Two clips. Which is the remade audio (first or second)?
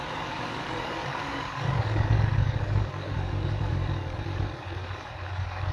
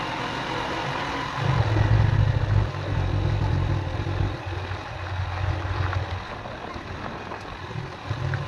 first